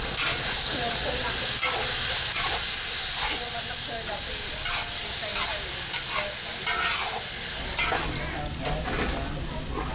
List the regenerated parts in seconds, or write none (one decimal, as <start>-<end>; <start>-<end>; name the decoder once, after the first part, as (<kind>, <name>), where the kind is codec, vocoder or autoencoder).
none